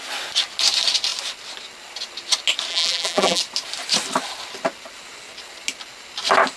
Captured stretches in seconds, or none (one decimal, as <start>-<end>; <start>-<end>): 0.0-2.7; 3.4-6.6